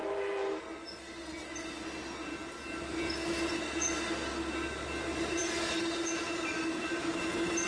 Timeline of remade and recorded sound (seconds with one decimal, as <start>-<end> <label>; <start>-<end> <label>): 0.0-0.6 remade; 0.6-5.1 recorded; 5.1-7.1 remade; 7.1-7.7 recorded